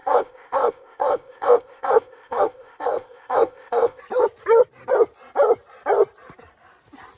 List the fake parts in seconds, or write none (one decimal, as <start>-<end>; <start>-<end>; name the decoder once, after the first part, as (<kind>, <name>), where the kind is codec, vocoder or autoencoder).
0.0-4.0 (codec, ZipCodec)